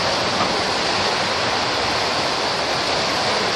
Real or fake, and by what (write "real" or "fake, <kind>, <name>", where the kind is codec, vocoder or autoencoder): fake, vocoder, BigVGAN v2